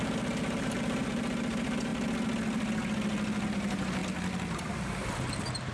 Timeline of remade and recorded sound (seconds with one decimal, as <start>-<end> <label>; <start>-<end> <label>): 0.0-1.9 remade; 1.9-3.5 recorded; 3.5-4.0 remade; 4.0-4.7 recorded; 4.7-5.7 remade